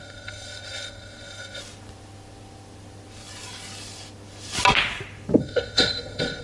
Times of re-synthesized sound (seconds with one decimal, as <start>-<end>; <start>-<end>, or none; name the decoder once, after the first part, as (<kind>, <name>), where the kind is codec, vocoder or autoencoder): 0.0-1.6 (codec, SNAC); 5.4-6.4